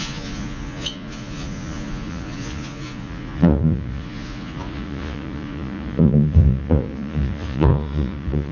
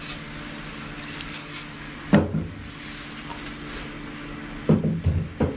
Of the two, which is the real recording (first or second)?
second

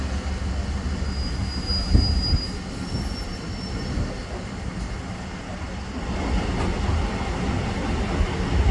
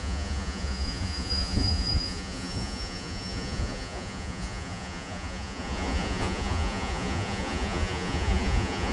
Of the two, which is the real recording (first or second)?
first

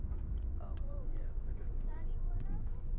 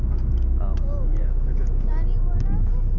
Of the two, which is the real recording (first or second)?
second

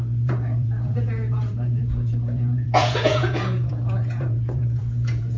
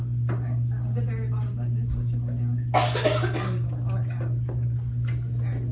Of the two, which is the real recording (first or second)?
second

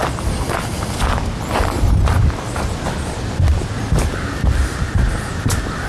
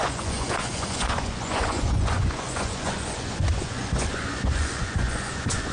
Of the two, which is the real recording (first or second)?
first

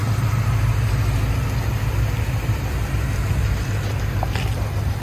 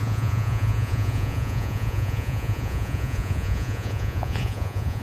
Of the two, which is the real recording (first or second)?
first